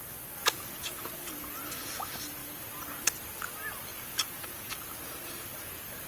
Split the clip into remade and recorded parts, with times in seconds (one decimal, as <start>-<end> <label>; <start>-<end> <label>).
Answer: 0.0-0.4 recorded; 0.4-1.3 remade; 1.3-3.9 recorded; 3.9-4.7 remade; 4.7-6.1 recorded